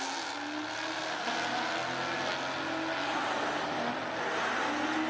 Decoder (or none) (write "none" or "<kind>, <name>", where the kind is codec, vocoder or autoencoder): none